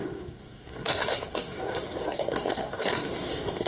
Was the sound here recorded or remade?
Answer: remade